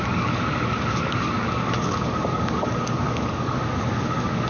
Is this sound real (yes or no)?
no